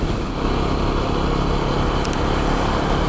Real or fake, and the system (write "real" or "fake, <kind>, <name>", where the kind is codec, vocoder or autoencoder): real